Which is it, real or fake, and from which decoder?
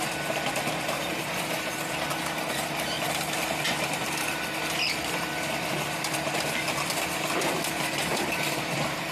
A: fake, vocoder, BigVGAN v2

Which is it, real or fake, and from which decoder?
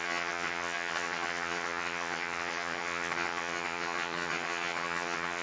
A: fake, vocoder, HiFi-GAN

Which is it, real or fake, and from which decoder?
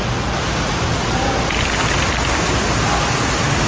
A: real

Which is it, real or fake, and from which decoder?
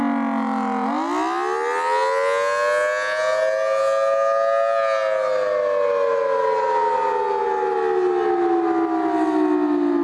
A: real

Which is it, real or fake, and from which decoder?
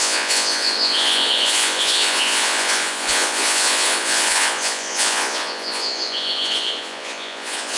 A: fake, vocoder, Vocos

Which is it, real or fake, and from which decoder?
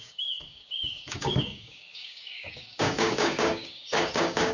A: fake, codec, DAC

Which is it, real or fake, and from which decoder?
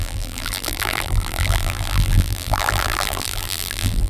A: fake, vocoder, BigVGAN v2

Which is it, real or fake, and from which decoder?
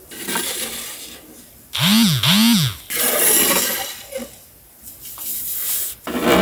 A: real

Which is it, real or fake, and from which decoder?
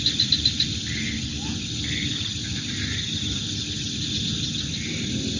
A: real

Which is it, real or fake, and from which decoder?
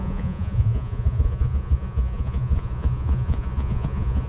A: fake, vocoder, Vocos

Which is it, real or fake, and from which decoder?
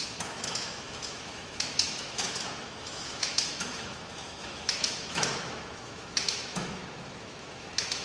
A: fake, autoencoder, DAC-VAE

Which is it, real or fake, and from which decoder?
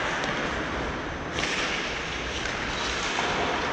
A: real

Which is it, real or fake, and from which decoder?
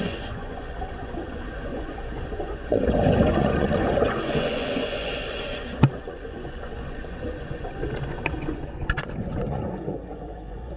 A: fake, vocoder, Vocos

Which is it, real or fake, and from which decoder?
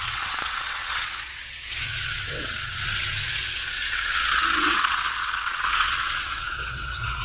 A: fake, vocoder, WaveNeXt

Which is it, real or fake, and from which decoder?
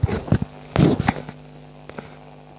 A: real